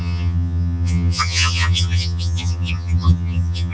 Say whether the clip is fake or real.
fake